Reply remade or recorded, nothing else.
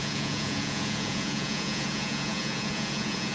remade